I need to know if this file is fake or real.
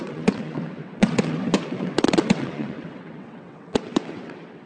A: fake